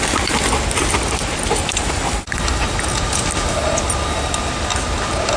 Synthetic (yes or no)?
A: no